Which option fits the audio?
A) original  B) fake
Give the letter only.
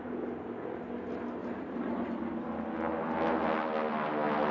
A